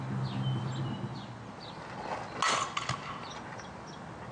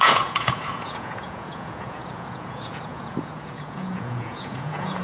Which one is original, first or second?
first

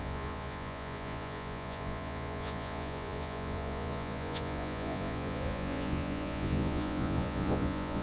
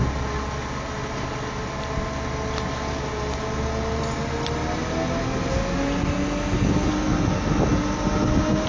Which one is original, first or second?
second